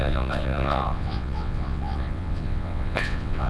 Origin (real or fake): fake